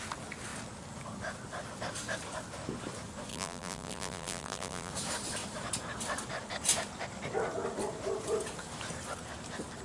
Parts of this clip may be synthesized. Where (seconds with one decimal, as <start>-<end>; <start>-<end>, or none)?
3.3-4.9